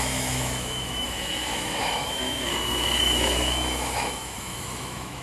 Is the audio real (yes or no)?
no